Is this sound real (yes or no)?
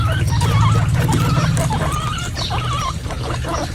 yes